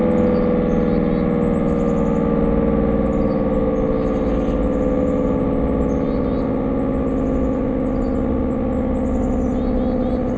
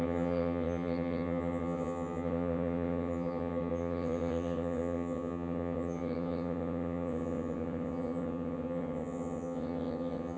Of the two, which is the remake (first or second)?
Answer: second